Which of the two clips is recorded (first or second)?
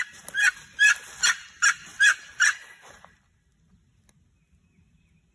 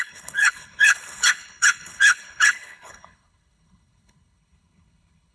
first